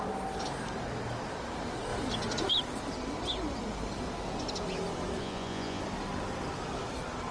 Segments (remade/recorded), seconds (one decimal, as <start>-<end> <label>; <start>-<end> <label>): 0.0-5.2 recorded; 5.2-5.8 remade; 5.8-7.3 recorded